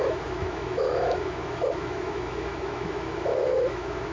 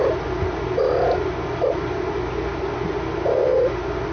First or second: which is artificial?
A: first